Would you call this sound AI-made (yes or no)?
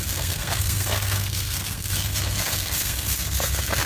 yes